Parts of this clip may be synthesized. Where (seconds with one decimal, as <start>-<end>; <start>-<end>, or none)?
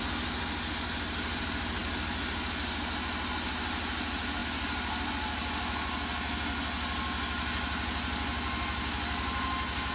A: none